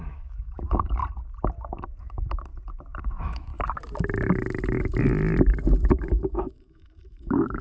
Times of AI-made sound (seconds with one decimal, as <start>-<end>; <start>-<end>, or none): 0.0-1.0; 2.0-2.5; 3.0-3.5; 6.0-7.6